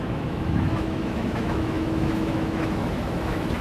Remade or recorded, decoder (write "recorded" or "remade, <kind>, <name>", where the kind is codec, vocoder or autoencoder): remade, autoencoder, DAC-VAE